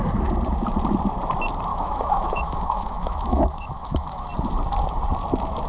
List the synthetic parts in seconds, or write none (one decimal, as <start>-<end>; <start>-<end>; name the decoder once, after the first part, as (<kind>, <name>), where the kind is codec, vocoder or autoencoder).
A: 1.7-4.3 (autoencoder, DAC-VAE)